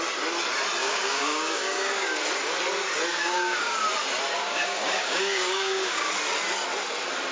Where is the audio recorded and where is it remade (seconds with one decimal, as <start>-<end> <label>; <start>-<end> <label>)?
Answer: 0.0-0.8 recorded; 0.8-2.2 remade; 2.2-3.1 recorded; 3.1-3.8 remade; 3.8-4.4 recorded; 4.4-6.1 remade; 6.1-7.3 recorded